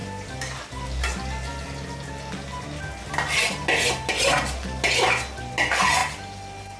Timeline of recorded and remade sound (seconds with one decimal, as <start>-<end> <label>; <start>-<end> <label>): 0.0-6.8 recorded